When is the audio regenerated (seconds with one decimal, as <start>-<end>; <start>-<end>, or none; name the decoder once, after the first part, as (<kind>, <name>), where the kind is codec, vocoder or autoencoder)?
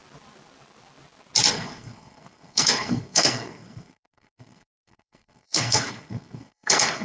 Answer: 1.5-7.0 (codec, SNAC)